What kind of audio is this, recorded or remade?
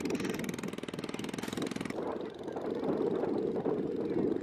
recorded